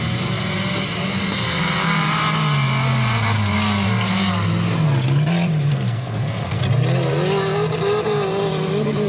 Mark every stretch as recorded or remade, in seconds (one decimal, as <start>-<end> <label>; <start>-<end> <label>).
0.0-5.7 recorded; 5.7-6.6 remade; 6.6-9.1 recorded